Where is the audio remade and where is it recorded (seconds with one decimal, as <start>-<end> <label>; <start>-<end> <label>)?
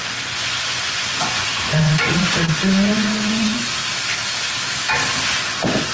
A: 0.0-3.8 remade; 3.8-5.3 recorded; 5.3-5.9 remade